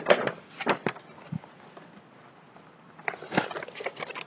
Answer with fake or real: real